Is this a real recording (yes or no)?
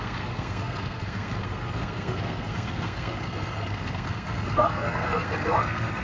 no